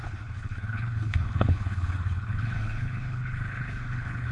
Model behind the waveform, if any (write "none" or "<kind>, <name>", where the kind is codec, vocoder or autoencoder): codec, HILCodec